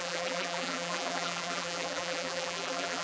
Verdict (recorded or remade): remade